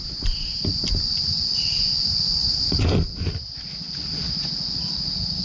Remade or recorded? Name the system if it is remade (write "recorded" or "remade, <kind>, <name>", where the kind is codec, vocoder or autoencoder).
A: recorded